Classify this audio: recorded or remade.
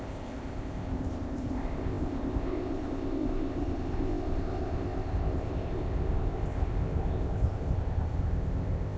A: remade